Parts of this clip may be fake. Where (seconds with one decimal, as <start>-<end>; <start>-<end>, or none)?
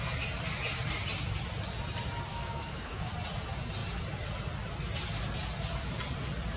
2.3-3.1